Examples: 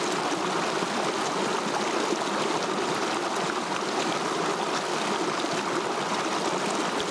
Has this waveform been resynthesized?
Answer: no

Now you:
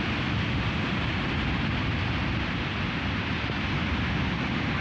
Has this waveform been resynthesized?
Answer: no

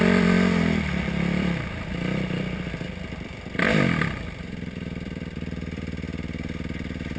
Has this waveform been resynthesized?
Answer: yes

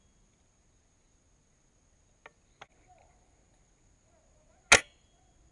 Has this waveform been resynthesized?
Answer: no